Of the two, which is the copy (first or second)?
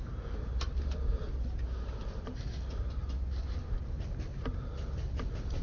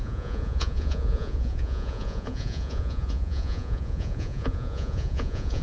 second